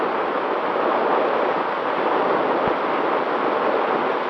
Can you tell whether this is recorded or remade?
recorded